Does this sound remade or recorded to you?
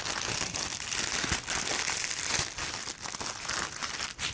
recorded